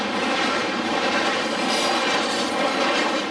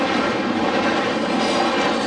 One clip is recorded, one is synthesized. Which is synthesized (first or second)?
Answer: first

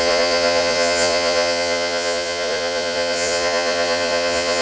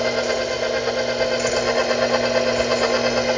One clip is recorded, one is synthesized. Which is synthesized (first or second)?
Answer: first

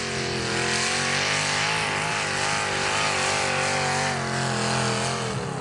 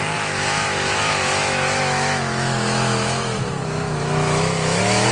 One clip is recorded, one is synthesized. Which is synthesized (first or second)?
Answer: second